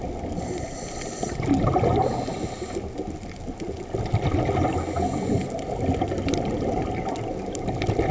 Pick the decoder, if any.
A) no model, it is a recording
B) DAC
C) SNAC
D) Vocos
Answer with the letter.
A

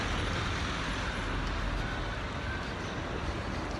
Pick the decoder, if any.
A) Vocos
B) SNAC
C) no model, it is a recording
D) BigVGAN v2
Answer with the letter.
C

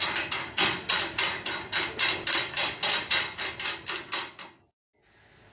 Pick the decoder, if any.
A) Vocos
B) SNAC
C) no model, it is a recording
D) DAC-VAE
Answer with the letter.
C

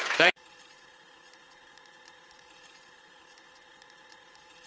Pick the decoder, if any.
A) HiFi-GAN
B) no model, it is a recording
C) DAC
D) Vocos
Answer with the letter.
D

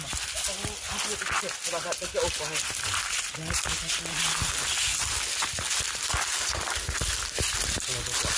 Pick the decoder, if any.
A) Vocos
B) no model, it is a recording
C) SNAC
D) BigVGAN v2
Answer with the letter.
B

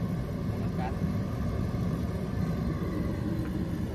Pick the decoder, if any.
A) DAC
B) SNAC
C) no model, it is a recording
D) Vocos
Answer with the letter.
C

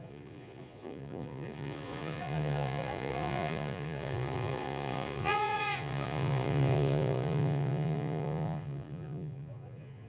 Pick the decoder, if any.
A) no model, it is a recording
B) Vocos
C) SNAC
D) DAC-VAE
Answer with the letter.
B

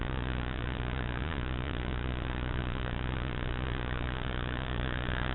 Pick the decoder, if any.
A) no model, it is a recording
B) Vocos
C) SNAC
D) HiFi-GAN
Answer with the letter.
B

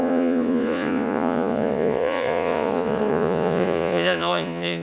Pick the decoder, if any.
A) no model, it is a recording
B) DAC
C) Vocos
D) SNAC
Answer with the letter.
C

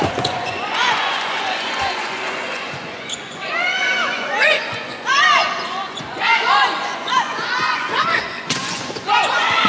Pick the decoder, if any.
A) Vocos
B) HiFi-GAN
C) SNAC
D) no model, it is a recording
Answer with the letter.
A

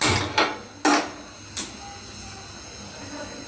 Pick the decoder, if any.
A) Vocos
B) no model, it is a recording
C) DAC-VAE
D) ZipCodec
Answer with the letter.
B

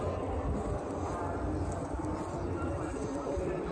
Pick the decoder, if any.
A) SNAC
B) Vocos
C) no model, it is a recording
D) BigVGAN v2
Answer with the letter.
C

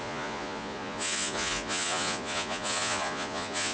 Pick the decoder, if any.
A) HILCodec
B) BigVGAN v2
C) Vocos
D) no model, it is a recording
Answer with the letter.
C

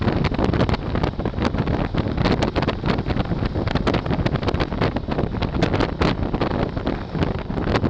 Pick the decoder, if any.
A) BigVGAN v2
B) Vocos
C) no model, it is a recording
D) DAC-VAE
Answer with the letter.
C